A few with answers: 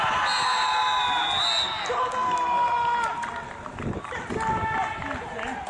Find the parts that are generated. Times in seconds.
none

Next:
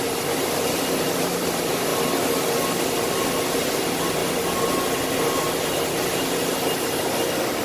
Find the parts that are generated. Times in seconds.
none

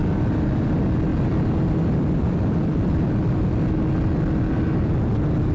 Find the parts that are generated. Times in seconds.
1.1-3.5

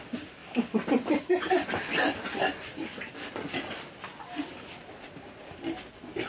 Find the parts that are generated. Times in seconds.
0.4-3.3

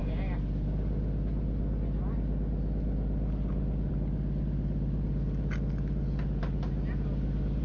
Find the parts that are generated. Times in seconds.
none

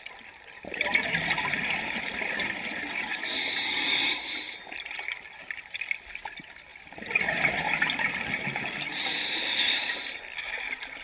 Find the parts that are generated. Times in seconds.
none

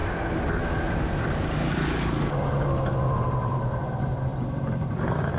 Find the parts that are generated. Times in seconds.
3.2-4.3; 4.9-5.4

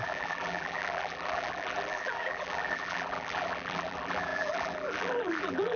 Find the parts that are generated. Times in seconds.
0.0-5.8